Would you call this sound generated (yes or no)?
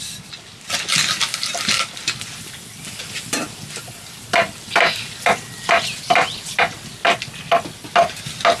no